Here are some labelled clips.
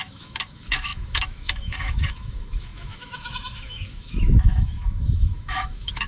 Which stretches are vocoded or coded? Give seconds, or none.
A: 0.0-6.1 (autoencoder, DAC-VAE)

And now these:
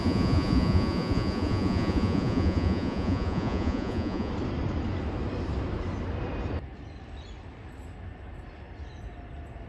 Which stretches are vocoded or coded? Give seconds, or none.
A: 0.0-4.3 (vocoder, Vocos)